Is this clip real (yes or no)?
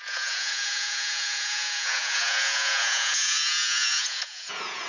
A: no